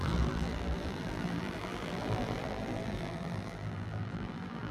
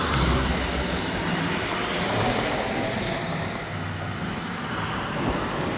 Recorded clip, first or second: second